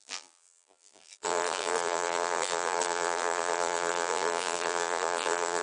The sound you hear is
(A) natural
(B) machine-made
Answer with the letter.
B